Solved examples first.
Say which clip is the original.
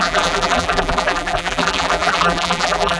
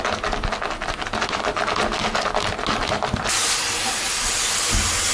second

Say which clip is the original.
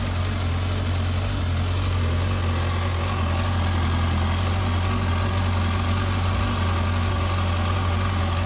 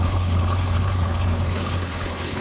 first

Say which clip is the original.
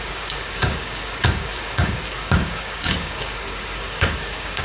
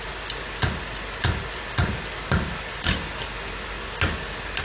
second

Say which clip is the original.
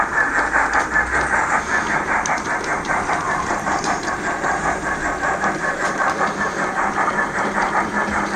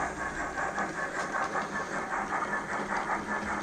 second